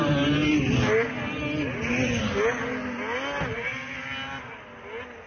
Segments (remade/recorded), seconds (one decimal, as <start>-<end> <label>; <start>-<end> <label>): 0.0-5.3 recorded